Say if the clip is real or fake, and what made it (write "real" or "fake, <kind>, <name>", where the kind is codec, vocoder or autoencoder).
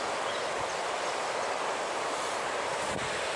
real